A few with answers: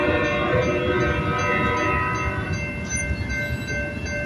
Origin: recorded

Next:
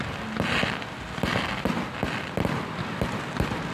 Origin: recorded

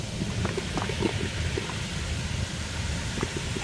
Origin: recorded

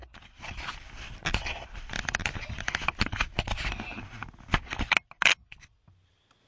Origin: recorded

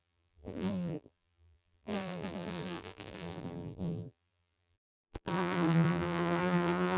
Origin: remade